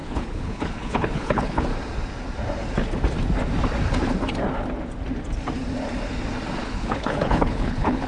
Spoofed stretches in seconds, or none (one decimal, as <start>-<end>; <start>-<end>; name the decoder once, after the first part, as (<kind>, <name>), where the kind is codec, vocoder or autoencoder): 0.0-1.7 (codec, HILCodec); 6.6-8.1